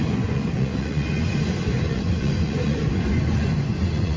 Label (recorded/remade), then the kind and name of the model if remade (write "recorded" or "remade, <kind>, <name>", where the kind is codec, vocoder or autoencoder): remade, vocoder, Vocos